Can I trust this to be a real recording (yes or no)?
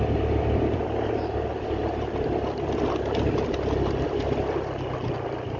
no